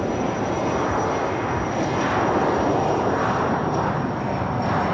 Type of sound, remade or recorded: recorded